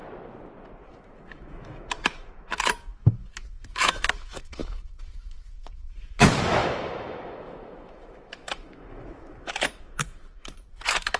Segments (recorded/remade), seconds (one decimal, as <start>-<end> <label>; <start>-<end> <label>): 0.0-0.9 recorded; 0.9-11.2 remade